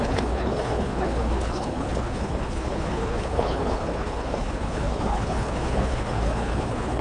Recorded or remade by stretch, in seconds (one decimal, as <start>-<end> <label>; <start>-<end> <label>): 0.0-7.0 remade